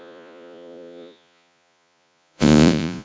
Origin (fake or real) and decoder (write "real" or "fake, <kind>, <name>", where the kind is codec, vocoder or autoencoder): fake, vocoder, Vocos